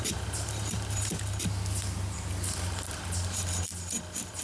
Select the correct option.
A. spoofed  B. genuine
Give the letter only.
B